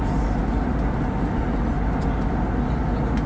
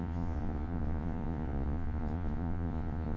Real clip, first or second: first